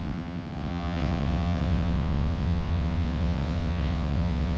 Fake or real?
fake